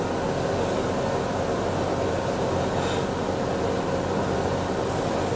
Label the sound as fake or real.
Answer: real